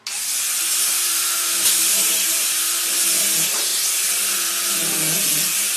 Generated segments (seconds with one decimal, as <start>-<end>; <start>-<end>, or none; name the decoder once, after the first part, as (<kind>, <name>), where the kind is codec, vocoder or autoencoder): 0.7-2.6 (vocoder, BigVGAN v2)